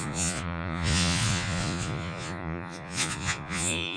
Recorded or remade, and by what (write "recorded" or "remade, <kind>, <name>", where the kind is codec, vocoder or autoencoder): remade, vocoder, Vocos